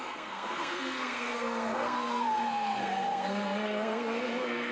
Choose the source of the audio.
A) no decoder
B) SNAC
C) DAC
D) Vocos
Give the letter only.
B